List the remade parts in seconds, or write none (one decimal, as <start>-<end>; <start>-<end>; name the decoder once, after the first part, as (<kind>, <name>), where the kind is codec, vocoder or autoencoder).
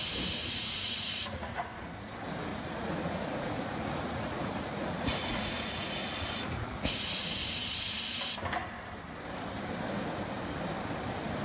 0.4-1.8 (vocoder, Vocos); 2.5-7.3